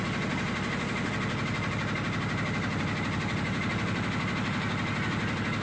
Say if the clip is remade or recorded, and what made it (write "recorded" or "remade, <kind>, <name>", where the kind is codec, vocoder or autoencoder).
recorded